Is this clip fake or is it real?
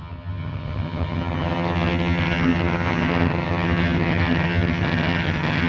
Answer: fake